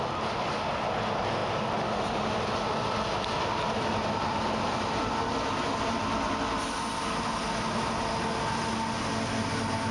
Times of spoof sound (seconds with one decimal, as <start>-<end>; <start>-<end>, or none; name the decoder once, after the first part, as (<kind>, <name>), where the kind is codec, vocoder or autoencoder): none